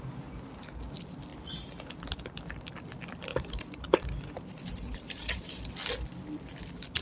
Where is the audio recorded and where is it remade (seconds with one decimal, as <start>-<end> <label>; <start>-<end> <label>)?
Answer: 0.0-3.3 recorded; 3.3-5.6 remade; 5.6-7.0 recorded